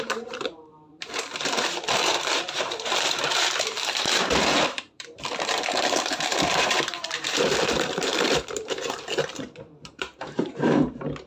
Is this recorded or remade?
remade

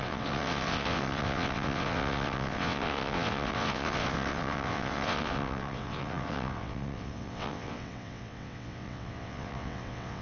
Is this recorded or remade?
remade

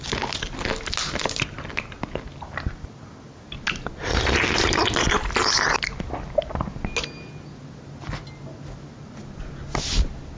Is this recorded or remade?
recorded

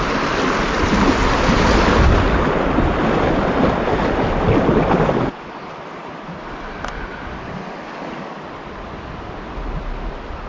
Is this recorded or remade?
recorded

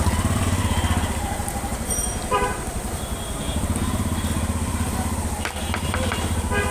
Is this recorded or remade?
remade